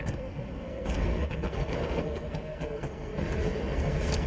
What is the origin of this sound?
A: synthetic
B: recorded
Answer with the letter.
A